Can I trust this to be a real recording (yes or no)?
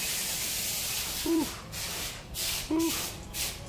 no